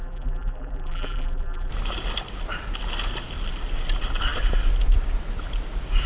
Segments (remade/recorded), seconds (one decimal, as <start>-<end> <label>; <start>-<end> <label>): 0.0-1.7 remade; 1.7-6.1 recorded